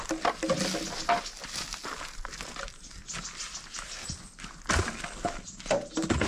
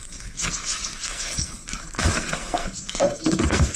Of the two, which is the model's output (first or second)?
second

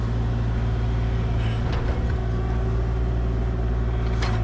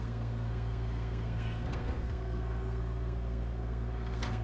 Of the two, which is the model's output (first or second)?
second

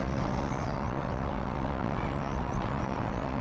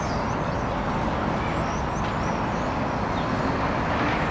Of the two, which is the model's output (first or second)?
first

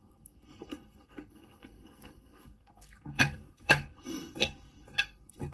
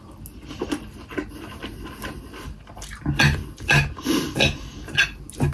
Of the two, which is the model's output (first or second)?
first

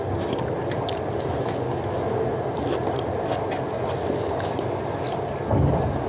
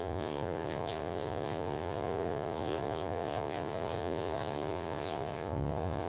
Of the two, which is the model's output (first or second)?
second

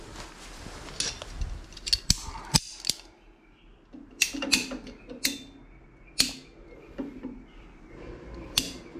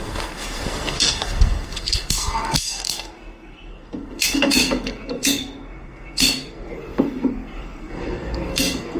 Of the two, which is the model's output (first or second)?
second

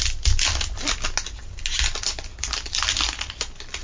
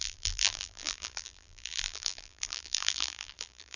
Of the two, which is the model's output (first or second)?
second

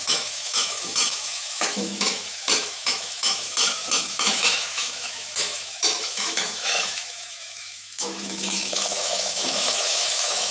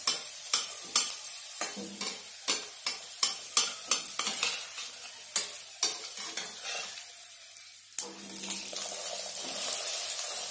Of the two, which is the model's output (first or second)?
first